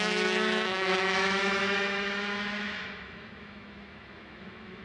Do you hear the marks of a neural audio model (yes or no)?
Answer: yes